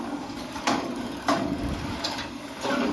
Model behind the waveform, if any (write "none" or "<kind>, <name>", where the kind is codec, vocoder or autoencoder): codec, DAC